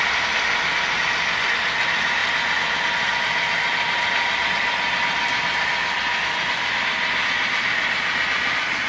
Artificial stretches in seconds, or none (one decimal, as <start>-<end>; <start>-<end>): none